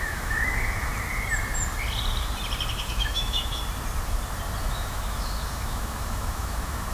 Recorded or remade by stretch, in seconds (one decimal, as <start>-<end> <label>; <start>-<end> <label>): 0.0-0.9 remade; 0.9-2.7 recorded; 2.7-3.6 remade; 3.6-4.6 recorded; 4.6-6.9 remade